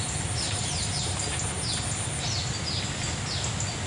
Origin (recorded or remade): recorded